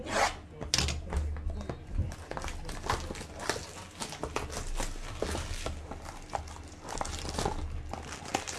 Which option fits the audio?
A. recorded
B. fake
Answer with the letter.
A